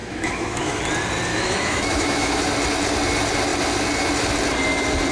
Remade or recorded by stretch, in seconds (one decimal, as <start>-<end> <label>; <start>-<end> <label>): 0.0-0.8 remade; 0.8-1.3 recorded; 1.3-2.4 remade; 2.4-5.1 recorded